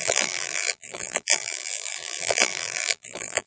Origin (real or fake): fake